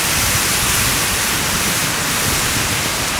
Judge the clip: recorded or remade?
remade